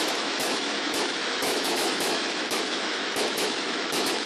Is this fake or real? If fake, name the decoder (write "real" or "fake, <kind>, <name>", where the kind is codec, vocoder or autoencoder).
fake, autoencoder, DAC-VAE